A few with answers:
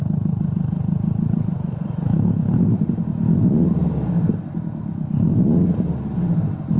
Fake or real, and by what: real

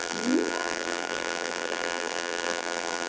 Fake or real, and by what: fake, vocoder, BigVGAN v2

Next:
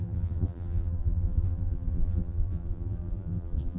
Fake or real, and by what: fake, vocoder, BigVGAN v2